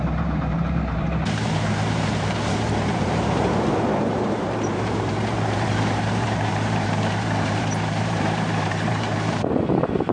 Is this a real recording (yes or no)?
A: no